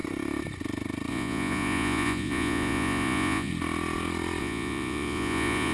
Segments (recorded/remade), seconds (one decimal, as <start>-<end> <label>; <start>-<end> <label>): 0.0-1.1 recorded; 1.1-3.5 remade; 3.5-4.4 recorded; 4.4-5.7 remade